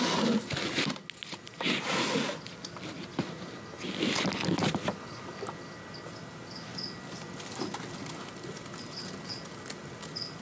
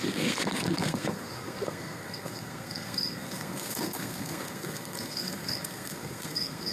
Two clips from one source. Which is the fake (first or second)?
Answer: second